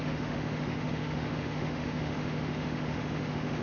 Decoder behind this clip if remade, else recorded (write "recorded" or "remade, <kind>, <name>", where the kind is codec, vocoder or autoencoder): remade, autoencoder, DAC-VAE